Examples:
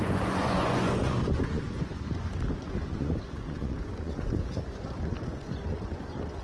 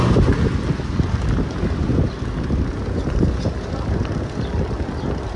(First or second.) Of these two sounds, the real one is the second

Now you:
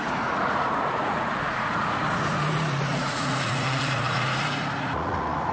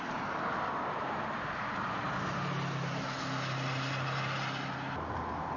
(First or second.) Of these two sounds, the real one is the second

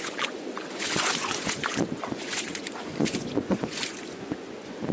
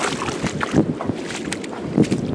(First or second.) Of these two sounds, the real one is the second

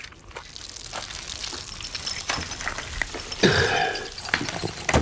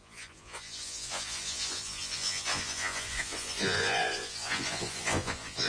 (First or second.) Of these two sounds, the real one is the first